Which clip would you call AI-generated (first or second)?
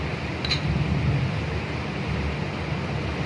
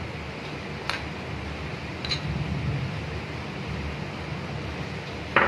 first